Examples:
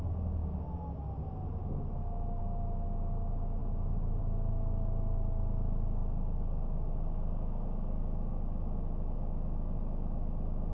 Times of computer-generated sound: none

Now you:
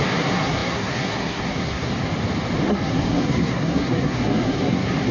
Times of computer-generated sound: 0.0-1.9 (codec, SNAC); 2.7-5.1

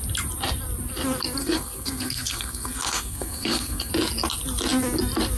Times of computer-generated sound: 1.4-3.9 (codec, SNAC)

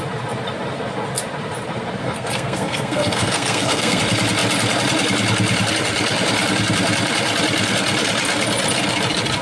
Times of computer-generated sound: 2.0-4.0 (codec, SNAC)

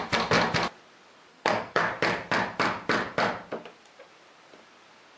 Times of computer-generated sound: 1.3-1.9 (codec, SNAC)

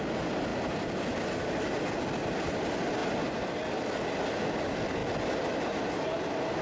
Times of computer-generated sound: none